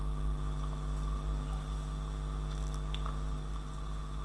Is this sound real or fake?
real